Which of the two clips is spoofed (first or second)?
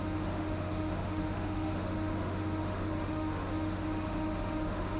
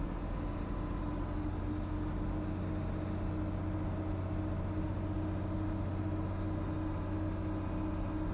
first